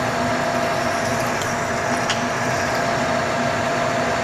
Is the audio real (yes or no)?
yes